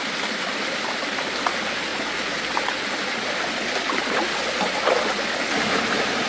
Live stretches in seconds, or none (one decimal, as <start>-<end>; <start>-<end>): 0.0-6.3